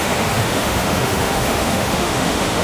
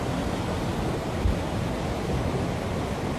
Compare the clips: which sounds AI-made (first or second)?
first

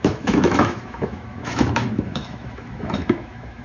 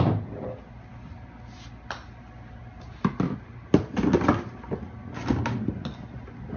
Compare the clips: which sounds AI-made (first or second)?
first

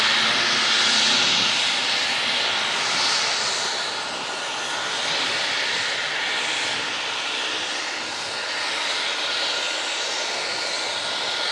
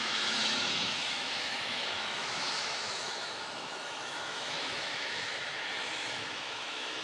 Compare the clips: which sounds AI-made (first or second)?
second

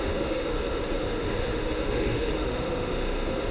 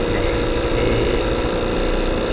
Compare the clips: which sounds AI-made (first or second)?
first